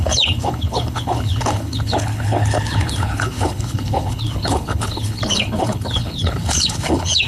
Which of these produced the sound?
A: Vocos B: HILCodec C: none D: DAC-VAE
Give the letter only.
B